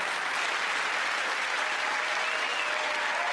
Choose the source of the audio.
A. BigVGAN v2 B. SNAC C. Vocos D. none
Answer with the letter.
D